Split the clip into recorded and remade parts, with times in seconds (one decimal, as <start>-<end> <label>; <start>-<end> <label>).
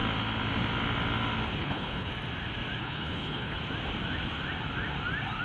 0.0-1.6 recorded; 1.6-2.1 remade; 2.1-2.8 recorded; 2.8-3.6 remade; 3.6-5.4 recorded